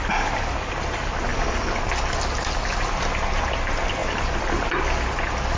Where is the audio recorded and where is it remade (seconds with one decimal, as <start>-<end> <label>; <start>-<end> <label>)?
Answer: 0.0-5.6 recorded